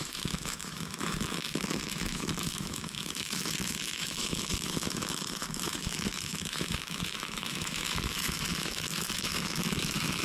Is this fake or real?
fake